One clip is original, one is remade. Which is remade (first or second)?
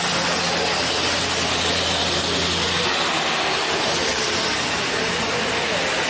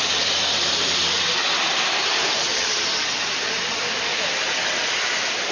second